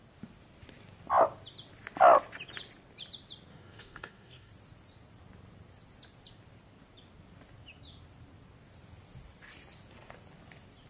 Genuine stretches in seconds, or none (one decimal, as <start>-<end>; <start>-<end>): 0.0-3.5; 4.5-10.9